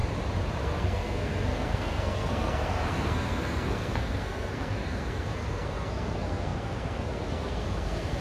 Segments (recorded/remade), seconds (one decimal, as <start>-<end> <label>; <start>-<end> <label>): 0.0-0.6 recorded; 0.6-8.2 remade